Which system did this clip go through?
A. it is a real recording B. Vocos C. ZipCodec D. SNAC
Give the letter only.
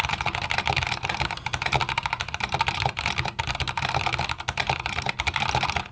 A